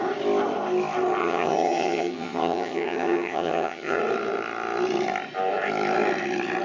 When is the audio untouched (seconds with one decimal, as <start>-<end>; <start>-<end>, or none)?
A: 0.0-1.2; 4.0-6.6